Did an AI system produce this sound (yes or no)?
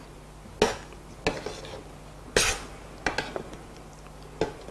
no